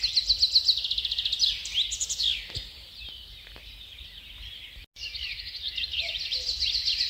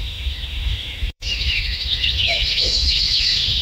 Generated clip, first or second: second